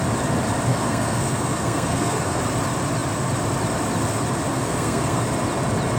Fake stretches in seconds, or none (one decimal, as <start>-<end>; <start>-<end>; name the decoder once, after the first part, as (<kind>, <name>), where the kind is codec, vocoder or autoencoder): 0.7-2.4 (codec, SNAC); 4.5-5.2